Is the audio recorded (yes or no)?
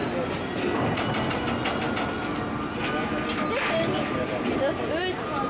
yes